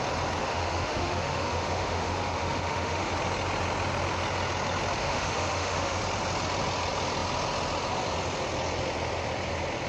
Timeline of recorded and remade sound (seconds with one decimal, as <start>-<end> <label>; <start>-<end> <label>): 0.0-0.4 recorded; 0.4-3.1 remade; 3.1-5.0 recorded; 5.0-6.0 remade; 6.0-9.9 recorded